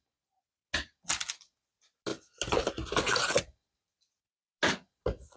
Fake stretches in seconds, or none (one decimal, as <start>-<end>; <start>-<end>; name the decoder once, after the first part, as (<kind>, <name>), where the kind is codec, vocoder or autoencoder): none